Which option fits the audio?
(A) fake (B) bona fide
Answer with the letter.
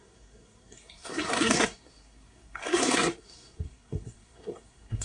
A